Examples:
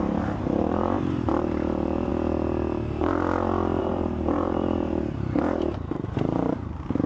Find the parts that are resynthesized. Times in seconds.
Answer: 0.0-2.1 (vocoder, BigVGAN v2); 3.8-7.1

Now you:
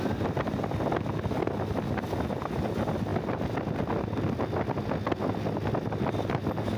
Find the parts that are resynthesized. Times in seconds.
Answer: none

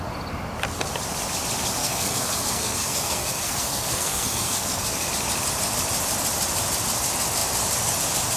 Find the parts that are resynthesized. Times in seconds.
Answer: 1.8-5.1 (codec, SNAC)

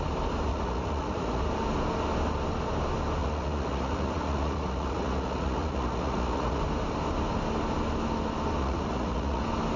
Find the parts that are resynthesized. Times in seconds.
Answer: 0.5-1.4 (vocoder, Vocos); 3.2-6.6; 8.6-9.4

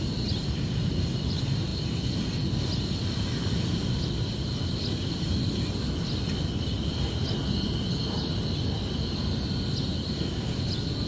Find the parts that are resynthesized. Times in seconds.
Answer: none